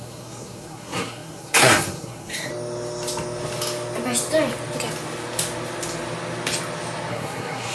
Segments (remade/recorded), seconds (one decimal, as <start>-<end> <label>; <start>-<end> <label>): 0.0-2.5 remade; 2.5-7.1 recorded; 7.1-7.7 remade